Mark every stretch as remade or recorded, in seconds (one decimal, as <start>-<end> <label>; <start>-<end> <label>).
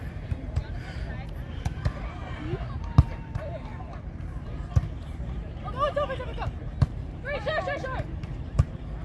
0.0-3.7 remade; 3.7-4.4 recorded; 4.4-5.6 remade; 5.6-6.8 recorded; 6.8-9.0 remade